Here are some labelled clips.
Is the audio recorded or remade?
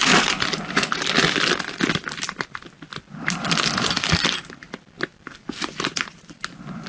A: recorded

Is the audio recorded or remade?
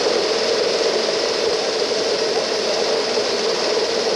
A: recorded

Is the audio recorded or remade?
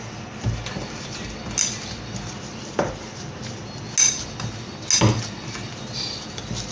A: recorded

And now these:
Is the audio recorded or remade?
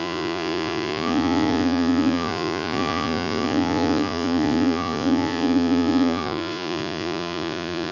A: remade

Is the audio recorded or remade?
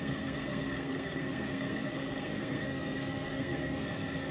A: remade